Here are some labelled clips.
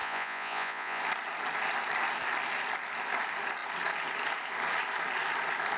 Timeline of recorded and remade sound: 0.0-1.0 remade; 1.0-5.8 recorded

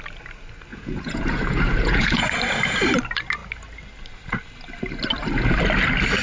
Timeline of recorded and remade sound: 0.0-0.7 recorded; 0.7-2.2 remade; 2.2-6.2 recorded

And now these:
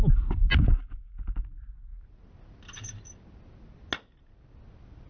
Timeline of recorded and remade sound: 0.0-5.1 recorded